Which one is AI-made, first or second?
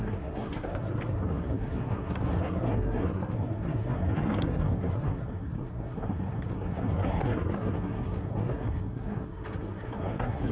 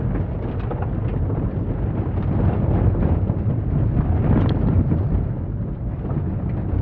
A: first